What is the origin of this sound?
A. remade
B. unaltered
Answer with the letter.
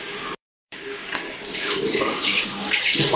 A